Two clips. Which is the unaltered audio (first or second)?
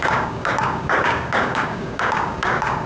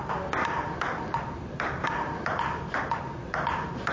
second